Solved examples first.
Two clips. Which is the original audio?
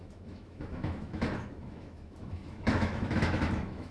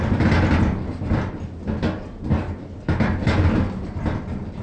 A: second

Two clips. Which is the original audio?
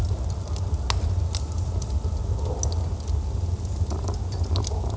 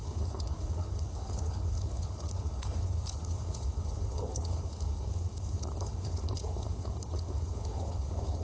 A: first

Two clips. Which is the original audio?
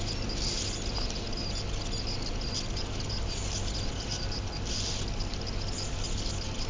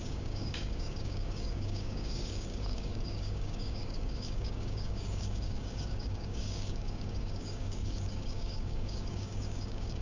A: first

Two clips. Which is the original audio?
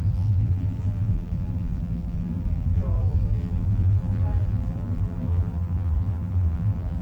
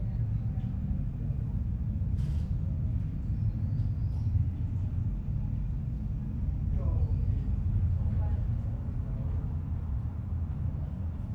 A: second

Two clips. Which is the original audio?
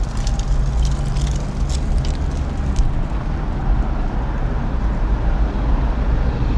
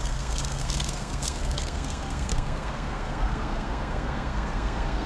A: first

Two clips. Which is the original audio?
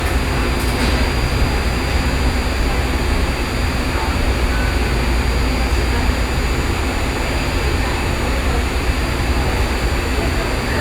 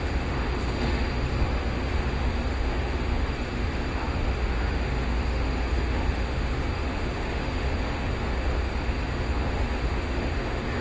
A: first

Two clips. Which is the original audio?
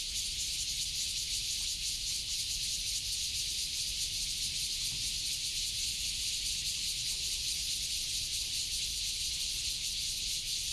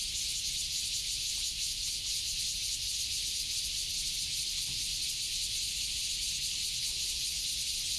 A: second